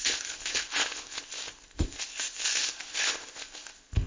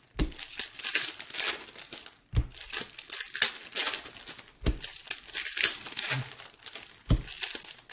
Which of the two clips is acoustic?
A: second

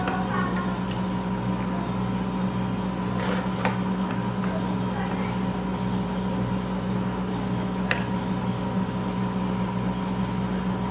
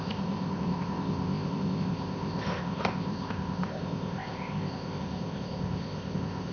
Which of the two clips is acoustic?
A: first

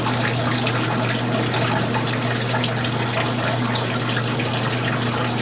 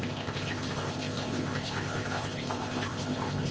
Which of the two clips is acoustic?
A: first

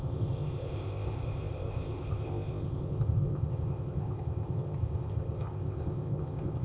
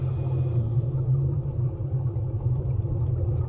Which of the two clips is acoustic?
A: second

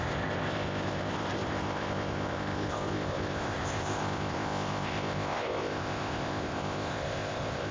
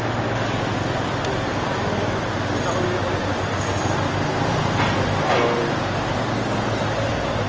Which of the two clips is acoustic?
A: second